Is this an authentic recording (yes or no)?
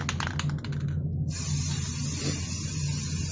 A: yes